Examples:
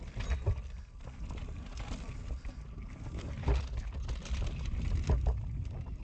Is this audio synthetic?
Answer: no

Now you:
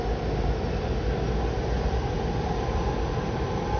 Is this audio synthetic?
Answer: no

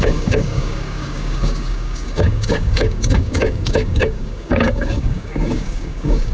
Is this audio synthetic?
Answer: yes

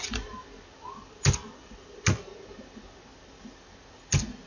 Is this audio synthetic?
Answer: no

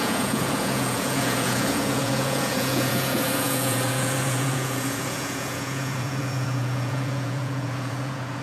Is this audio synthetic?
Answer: yes